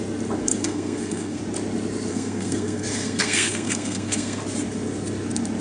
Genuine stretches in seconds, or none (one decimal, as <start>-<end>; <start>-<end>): 0.0-0.4; 1.4-2.1; 4.4-5.6